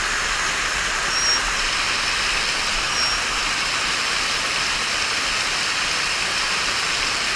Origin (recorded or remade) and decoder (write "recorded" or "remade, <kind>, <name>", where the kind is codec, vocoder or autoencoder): recorded